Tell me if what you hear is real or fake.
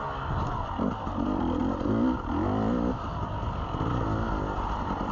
real